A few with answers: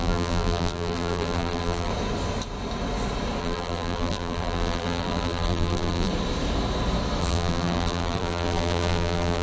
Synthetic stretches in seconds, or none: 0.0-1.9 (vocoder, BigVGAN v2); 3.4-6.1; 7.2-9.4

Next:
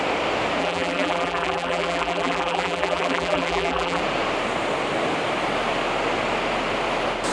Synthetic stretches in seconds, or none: 0.6-4.0 (vocoder, BigVGAN v2)

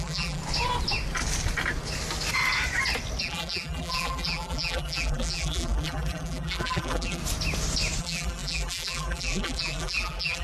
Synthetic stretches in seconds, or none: 0.0-0.4 (vocoder, BigVGAN v2); 3.2-7.2; 8.0-10.4